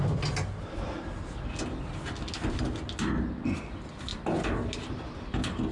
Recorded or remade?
recorded